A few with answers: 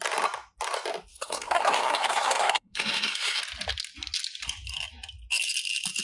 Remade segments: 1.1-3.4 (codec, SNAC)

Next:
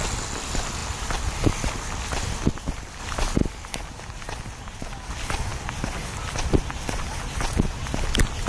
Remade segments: none

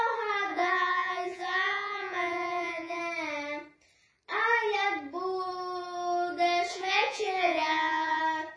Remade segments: 0.5-3.0 (vocoder, Vocos); 6.7-8.2

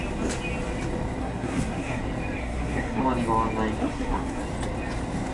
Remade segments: 1.2-2.0 (codec, SNAC); 2.4-3.0; 3.8-4.4

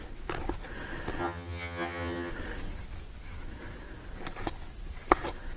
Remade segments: 1.2-2.3 (vocoder, HiFi-GAN)

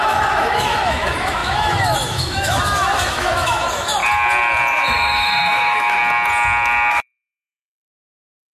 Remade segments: 0.0-4.0 (autoencoder, DAC-VAE); 4.7-6.0; 6.9-8.5

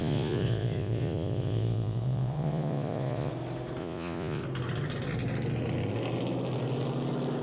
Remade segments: 0.0-3.3 (vocoder, Vocos); 3.8-4.4

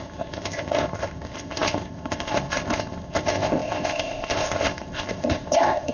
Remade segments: 0.0-5.9 (codec, ZipCodec)